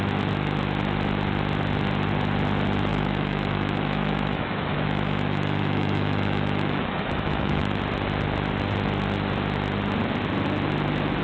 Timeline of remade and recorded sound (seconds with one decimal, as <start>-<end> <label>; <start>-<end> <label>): 0.0-2.9 recorded; 2.9-7.8 remade; 7.8-11.2 recorded